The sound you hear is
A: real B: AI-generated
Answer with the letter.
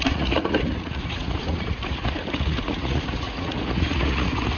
B